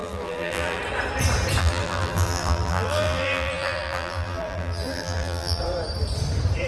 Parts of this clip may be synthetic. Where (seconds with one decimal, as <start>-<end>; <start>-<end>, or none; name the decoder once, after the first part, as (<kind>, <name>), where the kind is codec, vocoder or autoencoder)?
0.0-0.8 (vocoder, BigVGAN v2); 1.6-5.6